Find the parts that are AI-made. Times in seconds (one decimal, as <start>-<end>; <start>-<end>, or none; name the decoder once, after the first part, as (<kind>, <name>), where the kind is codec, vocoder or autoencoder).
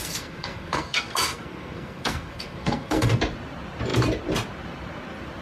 0.0-3.2 (codec, SNAC)